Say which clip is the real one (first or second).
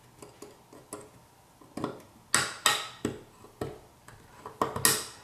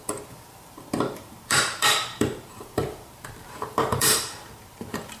first